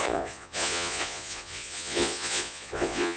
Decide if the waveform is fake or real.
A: fake